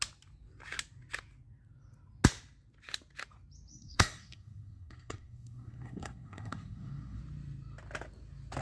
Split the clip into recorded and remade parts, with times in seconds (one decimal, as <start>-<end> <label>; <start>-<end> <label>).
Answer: 0.0-3.7 recorded; 3.7-7.2 remade; 7.2-8.6 recorded